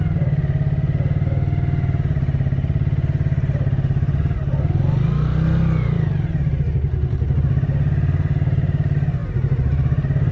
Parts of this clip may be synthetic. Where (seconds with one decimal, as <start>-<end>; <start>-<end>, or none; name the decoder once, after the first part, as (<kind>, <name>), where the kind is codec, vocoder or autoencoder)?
none